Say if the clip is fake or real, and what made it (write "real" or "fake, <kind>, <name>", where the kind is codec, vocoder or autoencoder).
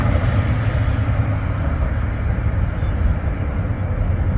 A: real